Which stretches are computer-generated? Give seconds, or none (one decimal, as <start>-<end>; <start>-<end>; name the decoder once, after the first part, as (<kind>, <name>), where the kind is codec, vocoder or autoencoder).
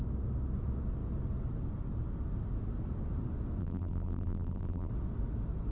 3.6-4.9 (vocoder, BigVGAN v2)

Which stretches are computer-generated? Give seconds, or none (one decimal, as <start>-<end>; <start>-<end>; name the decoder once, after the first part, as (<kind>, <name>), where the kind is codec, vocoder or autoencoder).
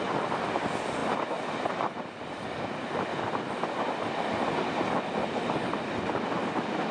none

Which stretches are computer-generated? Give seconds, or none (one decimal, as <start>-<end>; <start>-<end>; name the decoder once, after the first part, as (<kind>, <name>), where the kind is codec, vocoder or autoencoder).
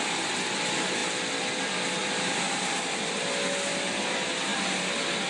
2.0-3.2 (vocoder, BigVGAN v2)